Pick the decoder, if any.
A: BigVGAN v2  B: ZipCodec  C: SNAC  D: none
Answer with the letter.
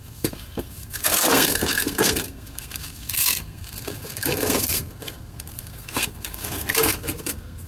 C